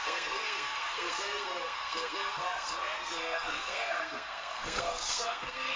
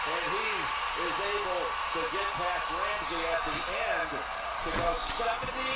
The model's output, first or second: first